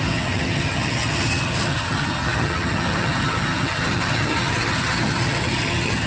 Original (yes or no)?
no